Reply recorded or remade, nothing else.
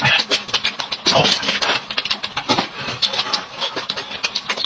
remade